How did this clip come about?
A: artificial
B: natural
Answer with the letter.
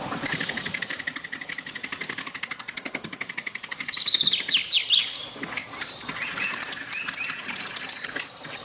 B